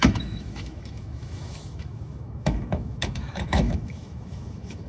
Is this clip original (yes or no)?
no